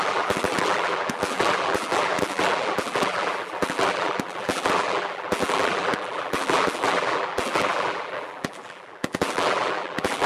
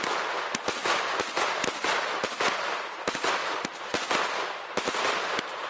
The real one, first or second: second